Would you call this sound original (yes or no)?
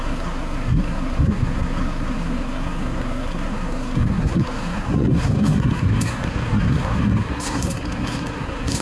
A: no